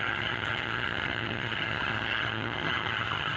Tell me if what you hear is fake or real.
fake